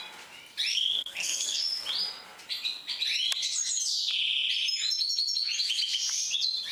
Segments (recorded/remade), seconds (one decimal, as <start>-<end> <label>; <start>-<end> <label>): 0.0-0.7 recorded; 0.7-1.6 remade; 1.6-6.7 recorded